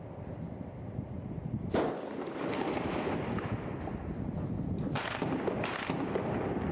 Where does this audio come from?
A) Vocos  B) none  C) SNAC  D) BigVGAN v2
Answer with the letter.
D